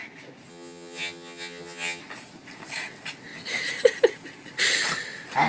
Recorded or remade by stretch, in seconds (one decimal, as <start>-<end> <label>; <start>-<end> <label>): 0.0-0.5 recorded; 0.5-2.0 remade; 2.0-5.5 recorded